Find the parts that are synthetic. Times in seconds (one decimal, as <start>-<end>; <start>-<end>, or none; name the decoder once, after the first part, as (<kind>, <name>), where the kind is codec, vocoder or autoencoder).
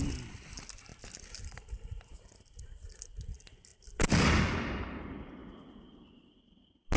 none